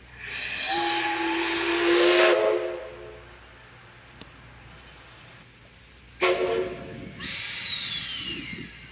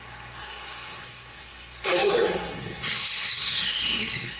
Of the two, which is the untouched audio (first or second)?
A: first